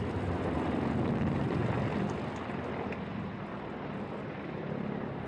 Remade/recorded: recorded